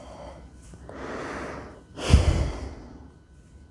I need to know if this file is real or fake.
real